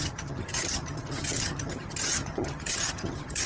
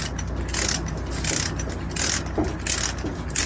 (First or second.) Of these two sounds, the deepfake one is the first